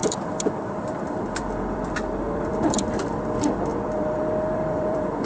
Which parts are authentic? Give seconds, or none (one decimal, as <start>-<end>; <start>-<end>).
3.2-3.7

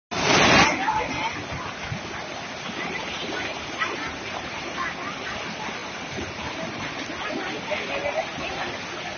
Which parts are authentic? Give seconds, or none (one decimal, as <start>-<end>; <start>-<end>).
0.0-3.5; 4.7-9.2

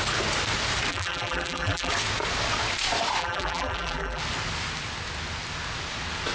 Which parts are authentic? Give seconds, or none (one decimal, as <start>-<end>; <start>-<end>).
0.0-0.9; 1.9-3.2; 4.2-6.3

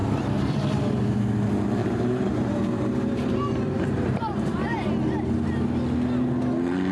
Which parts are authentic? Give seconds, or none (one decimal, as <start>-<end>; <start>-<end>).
1.2-1.8; 4.9-6.9